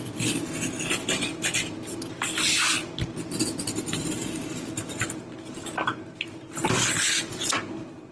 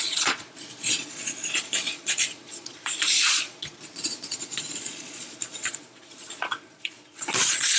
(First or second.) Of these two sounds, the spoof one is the second